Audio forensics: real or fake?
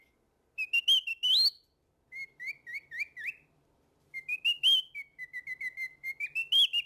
real